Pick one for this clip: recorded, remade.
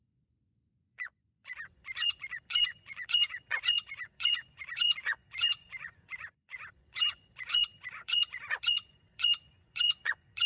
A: remade